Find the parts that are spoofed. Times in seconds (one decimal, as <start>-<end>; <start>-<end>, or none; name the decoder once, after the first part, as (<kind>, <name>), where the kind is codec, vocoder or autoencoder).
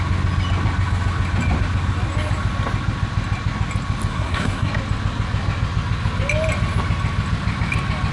4.1-4.7 (codec, SNAC)